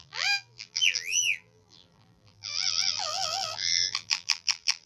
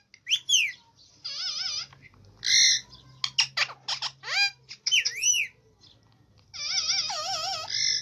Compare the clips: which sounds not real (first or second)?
first